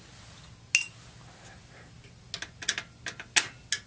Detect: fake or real real